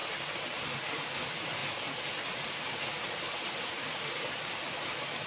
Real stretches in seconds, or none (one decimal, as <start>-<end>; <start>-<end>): 0.0-5.3